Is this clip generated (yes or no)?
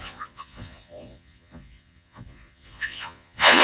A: yes